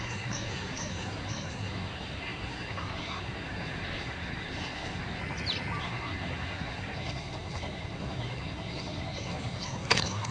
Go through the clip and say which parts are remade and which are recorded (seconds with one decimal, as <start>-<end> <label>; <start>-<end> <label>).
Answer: 0.0-5.2 remade; 5.2-5.8 recorded; 5.8-10.3 remade